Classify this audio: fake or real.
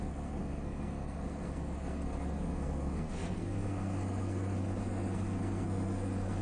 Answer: fake